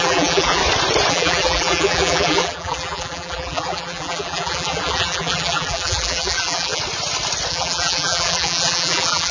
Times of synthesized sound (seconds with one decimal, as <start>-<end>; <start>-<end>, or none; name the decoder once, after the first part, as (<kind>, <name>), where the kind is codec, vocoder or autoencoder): 0.0-0.6 (vocoder, BigVGAN v2); 1.1-6.8; 7.5-9.3